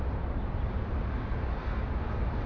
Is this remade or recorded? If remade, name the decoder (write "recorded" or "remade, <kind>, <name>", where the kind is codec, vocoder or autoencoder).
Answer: recorded